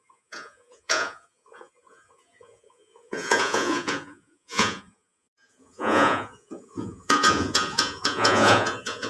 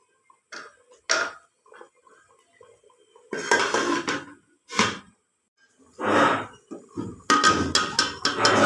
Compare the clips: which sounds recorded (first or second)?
second